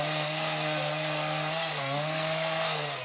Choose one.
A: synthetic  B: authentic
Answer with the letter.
A